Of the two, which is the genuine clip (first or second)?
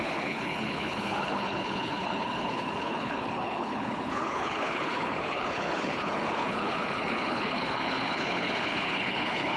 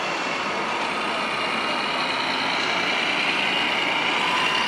second